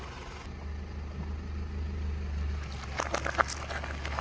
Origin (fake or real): real